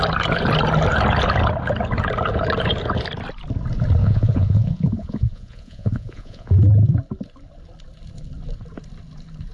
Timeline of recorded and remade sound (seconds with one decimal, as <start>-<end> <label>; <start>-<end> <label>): 0.0-4.0 recorded; 4.0-6.5 remade; 6.5-9.5 recorded